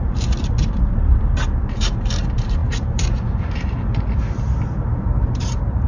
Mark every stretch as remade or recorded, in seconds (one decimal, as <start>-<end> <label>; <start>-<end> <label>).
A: 0.0-5.9 remade